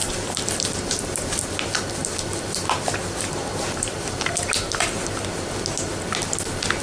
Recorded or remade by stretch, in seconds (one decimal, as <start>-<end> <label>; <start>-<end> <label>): 0.0-1.5 remade; 1.5-2.0 recorded; 2.0-5.4 remade; 5.4-6.8 recorded